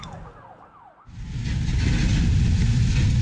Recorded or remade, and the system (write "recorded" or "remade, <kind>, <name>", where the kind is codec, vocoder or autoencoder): recorded